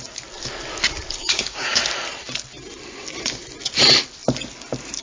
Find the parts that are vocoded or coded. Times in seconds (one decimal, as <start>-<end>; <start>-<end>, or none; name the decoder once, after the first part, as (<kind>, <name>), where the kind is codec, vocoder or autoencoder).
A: 1.2-1.8 (codec, DAC)